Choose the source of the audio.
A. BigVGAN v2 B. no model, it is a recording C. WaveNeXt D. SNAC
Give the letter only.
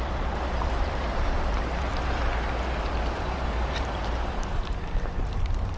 A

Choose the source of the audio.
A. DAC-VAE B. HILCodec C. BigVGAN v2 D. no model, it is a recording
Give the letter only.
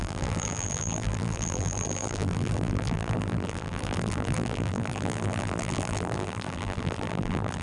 C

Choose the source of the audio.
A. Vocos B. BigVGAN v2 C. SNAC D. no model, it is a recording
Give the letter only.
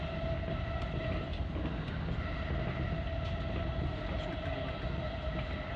D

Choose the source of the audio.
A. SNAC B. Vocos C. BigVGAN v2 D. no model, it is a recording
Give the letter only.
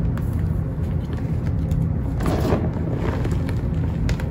D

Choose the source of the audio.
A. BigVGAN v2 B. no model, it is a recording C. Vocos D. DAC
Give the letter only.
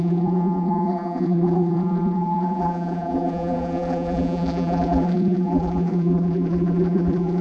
A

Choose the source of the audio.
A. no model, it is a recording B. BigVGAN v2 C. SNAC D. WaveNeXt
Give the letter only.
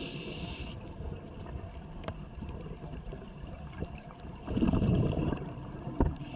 B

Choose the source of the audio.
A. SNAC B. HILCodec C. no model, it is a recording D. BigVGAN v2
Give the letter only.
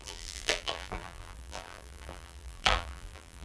D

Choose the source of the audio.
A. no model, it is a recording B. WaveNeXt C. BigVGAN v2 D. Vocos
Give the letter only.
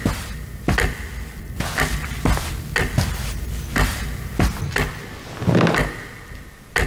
A